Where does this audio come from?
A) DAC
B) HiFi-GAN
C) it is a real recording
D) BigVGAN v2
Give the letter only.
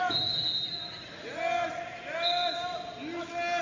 C